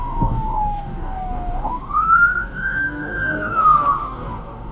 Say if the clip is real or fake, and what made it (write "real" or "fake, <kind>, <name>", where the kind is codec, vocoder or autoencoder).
fake, codec, DAC